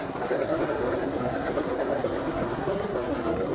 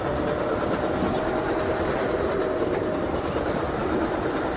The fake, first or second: first